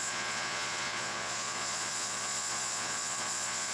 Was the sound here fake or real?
fake